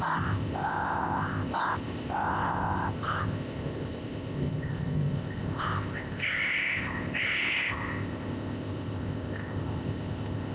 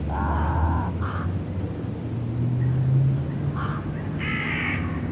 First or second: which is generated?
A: first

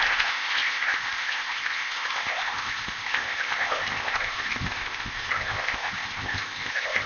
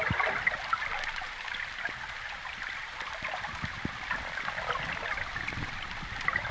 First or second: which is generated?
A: first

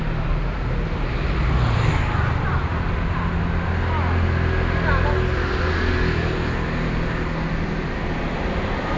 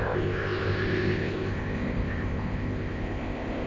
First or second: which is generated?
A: second